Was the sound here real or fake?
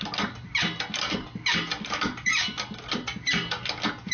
real